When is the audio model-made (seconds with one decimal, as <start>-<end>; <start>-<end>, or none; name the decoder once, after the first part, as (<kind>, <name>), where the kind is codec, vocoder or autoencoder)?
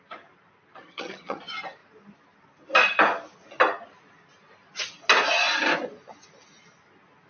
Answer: 0.8-1.4 (vocoder, HiFi-GAN)